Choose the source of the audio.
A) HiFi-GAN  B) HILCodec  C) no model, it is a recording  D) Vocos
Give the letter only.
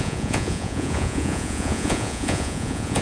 D